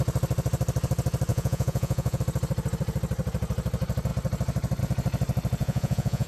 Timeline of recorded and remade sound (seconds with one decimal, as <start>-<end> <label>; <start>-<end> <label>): 0.0-1.3 recorded; 1.3-2.2 remade; 2.2-5.6 recorded; 5.6-6.3 remade